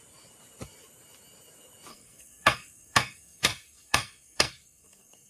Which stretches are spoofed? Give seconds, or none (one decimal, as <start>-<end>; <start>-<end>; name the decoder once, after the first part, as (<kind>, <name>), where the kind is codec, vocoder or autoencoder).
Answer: 1.9-5.3 (codec, SNAC)